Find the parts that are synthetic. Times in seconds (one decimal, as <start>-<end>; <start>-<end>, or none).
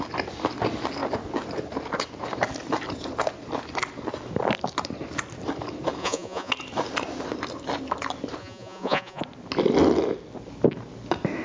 6.0-6.5; 8.4-9.2